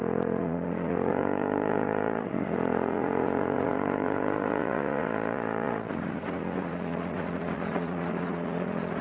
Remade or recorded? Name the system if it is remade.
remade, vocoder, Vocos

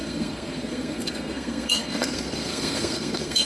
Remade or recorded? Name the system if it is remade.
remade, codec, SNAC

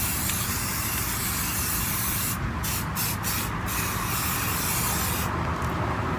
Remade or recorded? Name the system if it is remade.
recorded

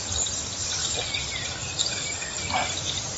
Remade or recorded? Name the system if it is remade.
recorded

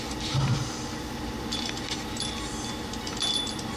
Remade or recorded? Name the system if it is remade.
remade, vocoder, BigVGAN v2